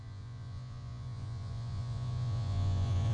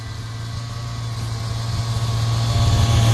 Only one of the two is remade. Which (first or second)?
first